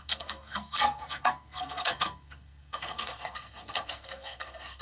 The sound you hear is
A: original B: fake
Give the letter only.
B